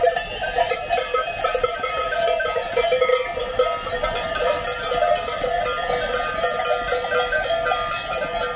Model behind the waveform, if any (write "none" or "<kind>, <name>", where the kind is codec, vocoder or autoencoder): none